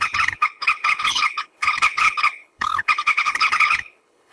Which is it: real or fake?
fake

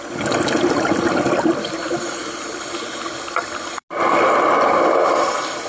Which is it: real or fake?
real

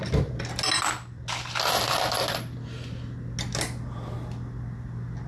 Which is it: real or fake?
real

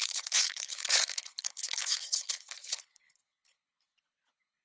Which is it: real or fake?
fake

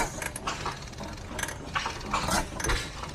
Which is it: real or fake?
real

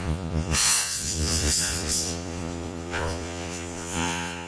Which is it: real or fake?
fake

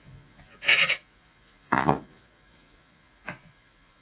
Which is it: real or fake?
fake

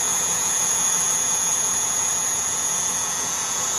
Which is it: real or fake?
fake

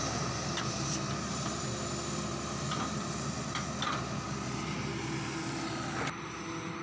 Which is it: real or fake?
real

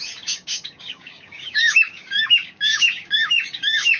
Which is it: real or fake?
fake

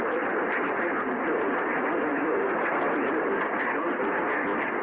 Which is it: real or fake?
real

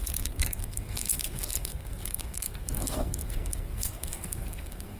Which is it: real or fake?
fake